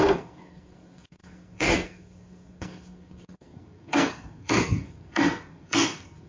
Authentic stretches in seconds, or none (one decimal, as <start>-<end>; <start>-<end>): none